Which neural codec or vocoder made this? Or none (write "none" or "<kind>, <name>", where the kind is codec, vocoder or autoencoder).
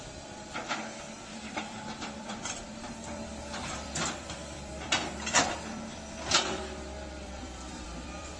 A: vocoder, BigVGAN v2